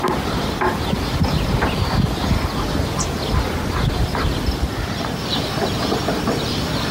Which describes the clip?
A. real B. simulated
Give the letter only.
A